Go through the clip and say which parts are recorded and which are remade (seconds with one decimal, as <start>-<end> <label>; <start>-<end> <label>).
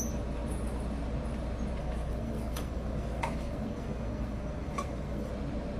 0.0-1.8 recorded; 1.8-5.3 remade; 5.3-5.8 recorded